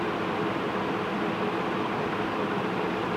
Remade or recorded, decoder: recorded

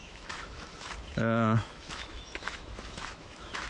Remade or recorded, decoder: remade, autoencoder, DAC-VAE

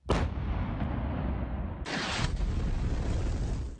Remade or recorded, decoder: recorded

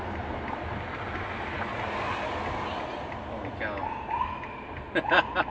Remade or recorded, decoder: recorded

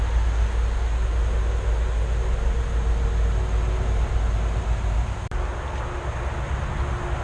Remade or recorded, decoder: recorded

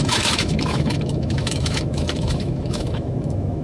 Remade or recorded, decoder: remade, autoencoder, DAC-VAE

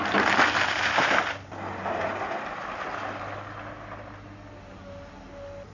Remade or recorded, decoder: recorded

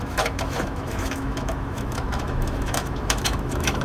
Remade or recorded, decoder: remade, autoencoder, DAC-VAE